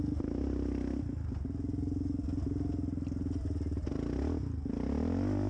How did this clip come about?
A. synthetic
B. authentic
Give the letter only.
B